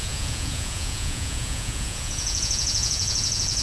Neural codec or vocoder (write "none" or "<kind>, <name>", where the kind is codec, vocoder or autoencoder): vocoder, Vocos